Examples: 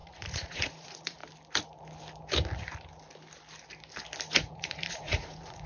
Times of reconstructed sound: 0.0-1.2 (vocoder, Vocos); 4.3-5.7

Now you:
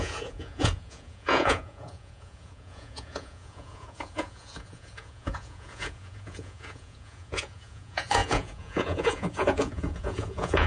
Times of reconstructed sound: 0.0-10.7 (vocoder, Vocos)